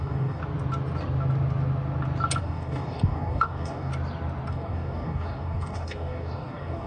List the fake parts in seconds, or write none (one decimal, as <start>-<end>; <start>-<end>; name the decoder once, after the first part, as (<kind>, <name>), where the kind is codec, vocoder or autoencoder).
0.0-0.4 (codec, DAC); 2.4-3.9; 4.5-6.9